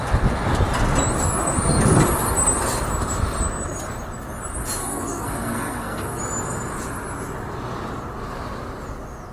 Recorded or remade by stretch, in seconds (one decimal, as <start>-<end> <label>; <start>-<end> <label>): 0.0-4.8 recorded; 4.8-6.2 remade; 6.2-9.3 recorded